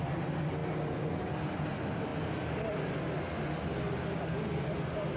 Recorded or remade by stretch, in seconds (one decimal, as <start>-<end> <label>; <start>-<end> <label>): 0.0-5.2 recorded